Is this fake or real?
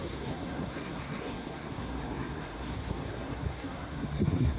fake